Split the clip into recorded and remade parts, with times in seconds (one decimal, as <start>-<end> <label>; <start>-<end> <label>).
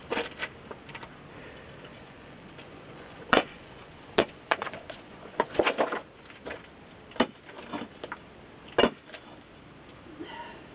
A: 0.0-1.9 recorded; 1.9-5.7 remade; 5.7-10.7 recorded